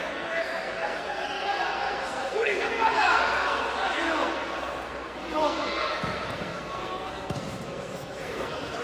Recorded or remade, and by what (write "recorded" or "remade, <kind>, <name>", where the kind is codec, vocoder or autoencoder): remade, codec, SNAC